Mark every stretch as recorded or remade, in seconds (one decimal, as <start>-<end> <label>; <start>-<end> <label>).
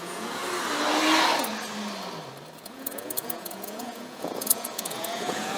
0.0-0.4 remade; 0.4-2.6 recorded; 2.6-5.6 remade